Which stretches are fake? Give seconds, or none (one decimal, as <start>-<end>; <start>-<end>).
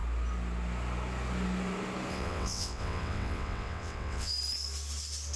2.1-4.3